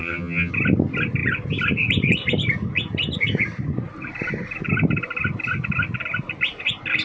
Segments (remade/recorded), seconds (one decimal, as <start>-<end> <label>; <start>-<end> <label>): 0.0-0.5 remade; 0.5-7.0 recorded